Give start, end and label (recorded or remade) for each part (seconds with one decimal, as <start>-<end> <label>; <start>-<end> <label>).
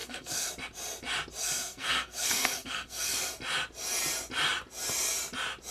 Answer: 0.0-0.5 remade; 0.5-1.4 recorded; 1.4-3.3 remade; 3.3-5.7 recorded